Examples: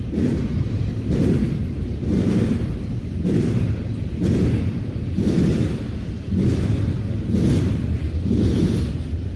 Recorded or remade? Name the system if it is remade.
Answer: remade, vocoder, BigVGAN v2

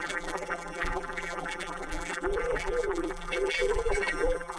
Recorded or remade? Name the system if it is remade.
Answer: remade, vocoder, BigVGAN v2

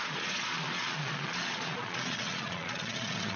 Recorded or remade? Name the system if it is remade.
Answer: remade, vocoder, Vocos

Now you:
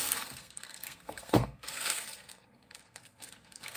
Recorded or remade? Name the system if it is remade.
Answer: remade, codec, SNAC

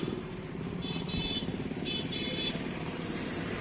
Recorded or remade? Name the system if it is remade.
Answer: remade, vocoder, BigVGAN v2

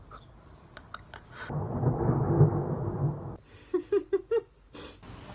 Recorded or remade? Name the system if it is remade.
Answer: recorded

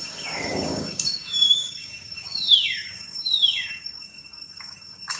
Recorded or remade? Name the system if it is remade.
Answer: remade, codec, DAC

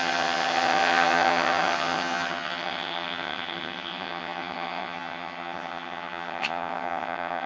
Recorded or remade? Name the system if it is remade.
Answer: remade, vocoder, HiFi-GAN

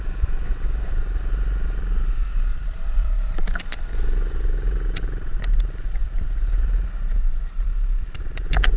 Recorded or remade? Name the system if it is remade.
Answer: remade, vocoder, BigVGAN v2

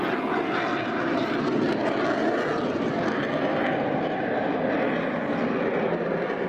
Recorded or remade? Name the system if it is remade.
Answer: recorded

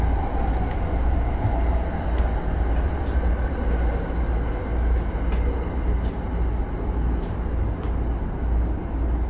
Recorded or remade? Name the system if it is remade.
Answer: recorded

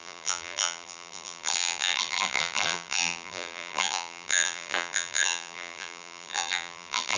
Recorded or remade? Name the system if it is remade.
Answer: remade, vocoder, BigVGAN v2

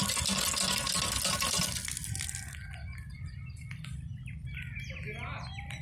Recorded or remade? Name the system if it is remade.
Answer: recorded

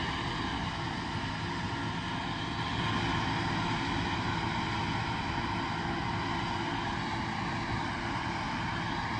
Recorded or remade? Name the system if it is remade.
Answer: recorded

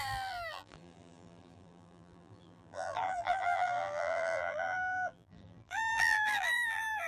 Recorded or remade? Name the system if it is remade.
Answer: remade, vocoder, BigVGAN v2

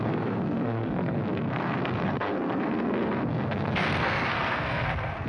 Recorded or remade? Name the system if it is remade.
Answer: remade, codec, SNAC